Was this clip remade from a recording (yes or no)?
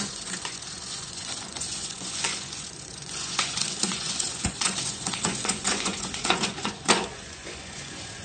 yes